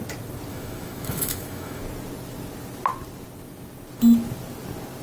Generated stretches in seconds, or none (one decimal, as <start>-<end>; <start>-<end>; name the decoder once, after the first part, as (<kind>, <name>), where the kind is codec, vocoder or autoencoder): 0.5-1.8 (autoencoder, DAC-VAE)